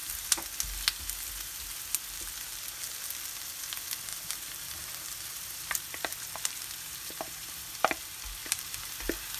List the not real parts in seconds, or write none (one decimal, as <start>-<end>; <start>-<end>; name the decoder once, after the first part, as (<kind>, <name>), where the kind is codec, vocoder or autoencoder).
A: 4.1-7.9 (vocoder, BigVGAN v2); 8.4-9.4